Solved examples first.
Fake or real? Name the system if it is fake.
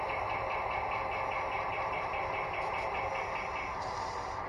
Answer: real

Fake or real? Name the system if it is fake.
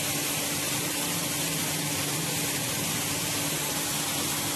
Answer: real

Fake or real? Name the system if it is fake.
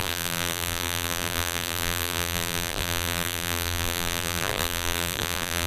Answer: fake, vocoder, BigVGAN v2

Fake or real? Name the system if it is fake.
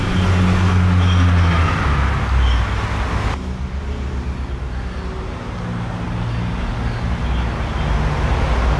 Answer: real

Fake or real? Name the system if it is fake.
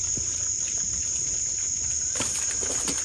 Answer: fake, vocoder, BigVGAN v2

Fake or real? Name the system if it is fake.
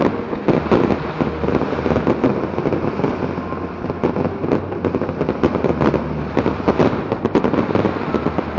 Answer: real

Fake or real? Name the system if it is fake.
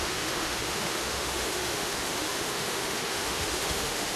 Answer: fake, autoencoder, DAC-VAE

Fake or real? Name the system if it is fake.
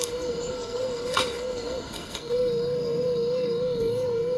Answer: fake, codec, SNAC